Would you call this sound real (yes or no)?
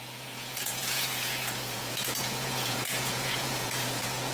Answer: no